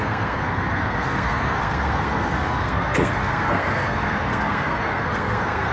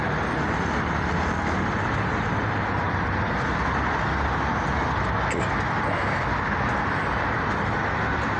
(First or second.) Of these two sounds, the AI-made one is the first